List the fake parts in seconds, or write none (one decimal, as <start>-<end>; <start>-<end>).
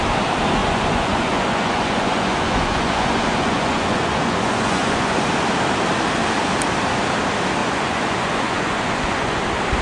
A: 0.6-5.3; 7.6-9.4